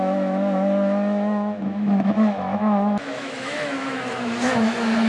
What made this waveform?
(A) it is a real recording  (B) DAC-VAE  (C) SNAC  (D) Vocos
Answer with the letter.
B